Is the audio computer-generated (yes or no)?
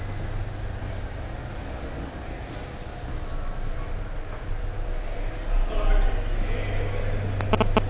no